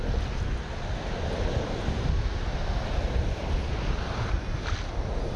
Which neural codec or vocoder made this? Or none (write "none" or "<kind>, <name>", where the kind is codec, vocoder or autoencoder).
none